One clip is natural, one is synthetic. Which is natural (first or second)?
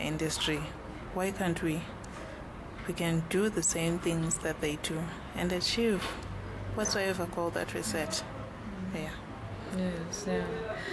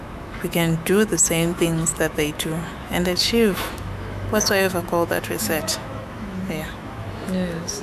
first